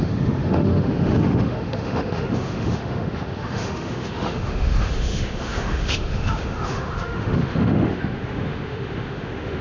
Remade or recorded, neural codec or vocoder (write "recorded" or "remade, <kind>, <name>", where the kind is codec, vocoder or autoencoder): remade, autoencoder, DAC-VAE